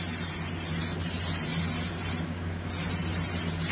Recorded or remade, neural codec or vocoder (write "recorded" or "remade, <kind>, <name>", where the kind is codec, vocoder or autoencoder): recorded